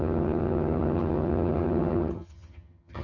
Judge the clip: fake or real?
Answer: fake